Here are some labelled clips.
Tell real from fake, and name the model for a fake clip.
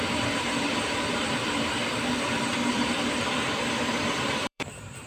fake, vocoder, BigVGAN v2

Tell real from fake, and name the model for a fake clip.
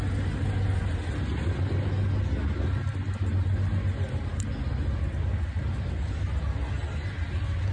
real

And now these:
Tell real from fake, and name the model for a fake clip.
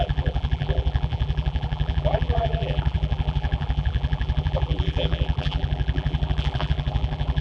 fake, vocoder, BigVGAN v2